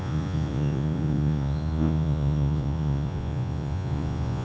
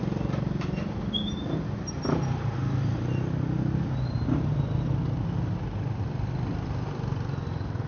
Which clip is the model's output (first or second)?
first